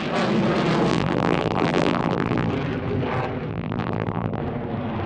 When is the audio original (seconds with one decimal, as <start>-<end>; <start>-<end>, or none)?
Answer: 0.0-0.9; 2.5-3.5; 4.4-5.1